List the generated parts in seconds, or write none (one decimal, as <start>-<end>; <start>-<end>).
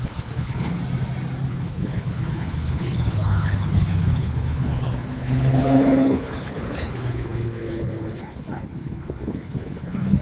0.0-0.8; 1.5-10.2